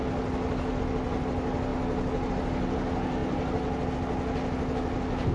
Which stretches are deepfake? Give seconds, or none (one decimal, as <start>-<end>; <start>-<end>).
none